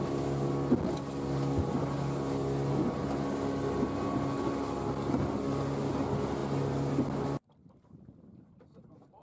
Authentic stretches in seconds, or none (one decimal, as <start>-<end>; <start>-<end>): 0.0-9.2